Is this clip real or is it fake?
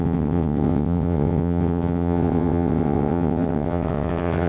fake